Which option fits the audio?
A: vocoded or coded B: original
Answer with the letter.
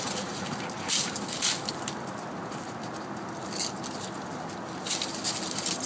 B